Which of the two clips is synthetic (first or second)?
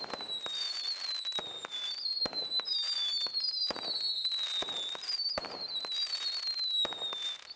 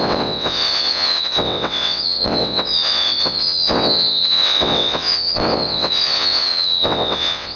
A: second